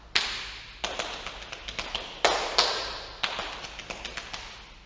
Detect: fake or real real